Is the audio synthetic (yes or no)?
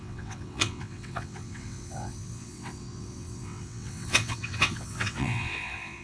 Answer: yes